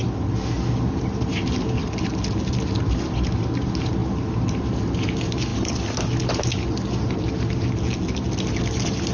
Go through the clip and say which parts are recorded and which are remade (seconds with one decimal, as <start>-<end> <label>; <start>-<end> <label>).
0.0-9.1 recorded